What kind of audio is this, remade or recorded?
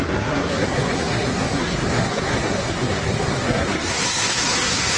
remade